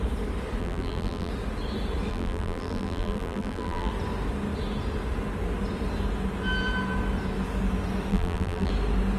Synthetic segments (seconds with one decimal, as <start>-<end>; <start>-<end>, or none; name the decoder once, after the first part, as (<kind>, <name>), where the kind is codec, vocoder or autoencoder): 0.6-1.3 (vocoder, BigVGAN v2); 2.1-3.9; 8.1-8.7